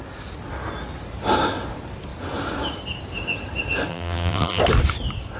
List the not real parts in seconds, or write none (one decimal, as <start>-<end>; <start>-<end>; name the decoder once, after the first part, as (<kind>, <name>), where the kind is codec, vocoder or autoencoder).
3.9-4.6 (vocoder, BigVGAN v2)